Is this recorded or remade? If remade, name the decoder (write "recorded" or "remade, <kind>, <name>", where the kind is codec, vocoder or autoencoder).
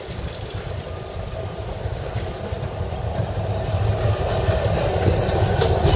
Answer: recorded